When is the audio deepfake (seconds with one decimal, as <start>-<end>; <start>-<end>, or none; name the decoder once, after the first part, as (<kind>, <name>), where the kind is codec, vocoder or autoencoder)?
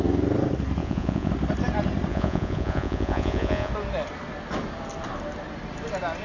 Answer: 0.8-1.3 (vocoder, Vocos); 2.1-3.7